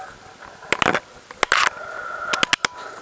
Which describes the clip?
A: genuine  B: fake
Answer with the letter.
A